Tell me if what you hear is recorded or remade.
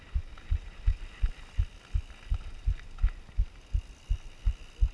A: recorded